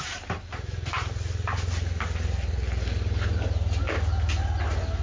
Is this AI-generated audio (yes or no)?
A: no